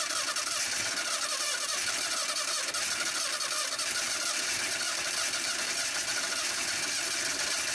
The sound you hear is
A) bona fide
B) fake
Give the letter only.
B